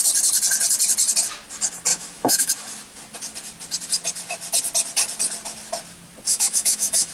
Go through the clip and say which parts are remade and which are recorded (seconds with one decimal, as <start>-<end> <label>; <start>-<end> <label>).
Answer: 0.0-1.9 recorded; 1.9-2.5 remade; 2.5-6.3 recorded; 6.3-7.1 remade